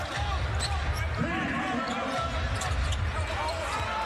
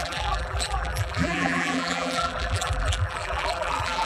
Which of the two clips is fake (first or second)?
second